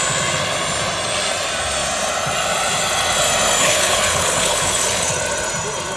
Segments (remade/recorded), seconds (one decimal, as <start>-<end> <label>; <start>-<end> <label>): 0.0-3.6 recorded; 3.6-5.1 remade; 5.1-6.0 recorded